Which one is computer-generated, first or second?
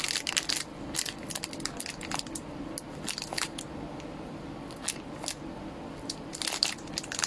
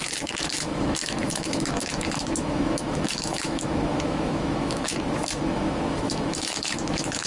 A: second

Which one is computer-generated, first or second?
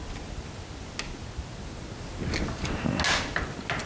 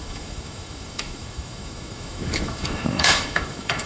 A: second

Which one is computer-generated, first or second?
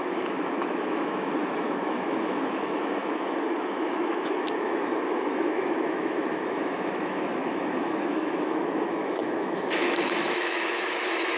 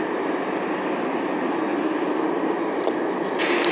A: first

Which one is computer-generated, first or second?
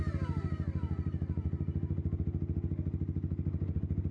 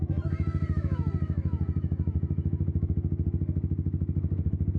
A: second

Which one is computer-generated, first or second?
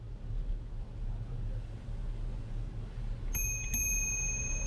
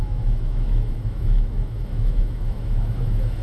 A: second